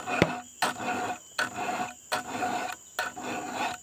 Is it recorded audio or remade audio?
recorded